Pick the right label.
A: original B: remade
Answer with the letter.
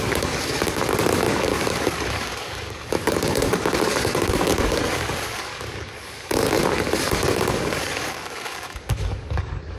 B